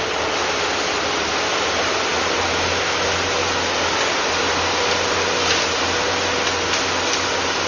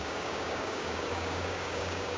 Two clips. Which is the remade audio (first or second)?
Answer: second